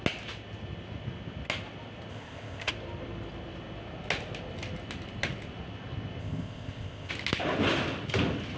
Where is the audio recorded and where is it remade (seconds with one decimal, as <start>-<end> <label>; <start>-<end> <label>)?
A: 0.0-2.1 recorded; 2.1-2.7 remade; 2.7-6.2 recorded; 6.2-7.1 remade; 7.1-8.6 recorded